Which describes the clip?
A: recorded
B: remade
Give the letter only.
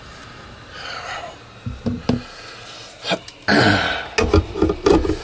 A